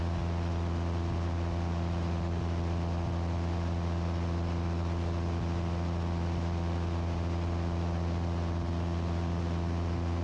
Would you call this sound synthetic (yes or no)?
no